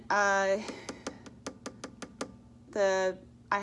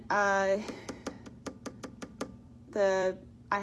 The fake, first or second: second